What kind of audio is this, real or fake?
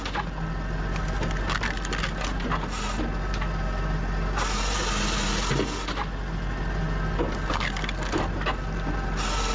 real